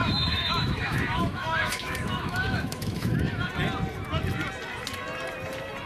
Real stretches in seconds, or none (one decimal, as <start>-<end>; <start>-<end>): 3.5-5.9